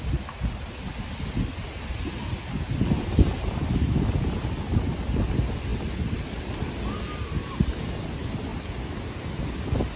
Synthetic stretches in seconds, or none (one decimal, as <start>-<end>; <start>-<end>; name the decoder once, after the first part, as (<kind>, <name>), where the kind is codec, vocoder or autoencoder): none